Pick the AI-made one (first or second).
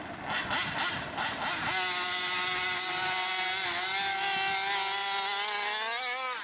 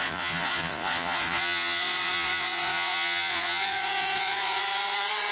second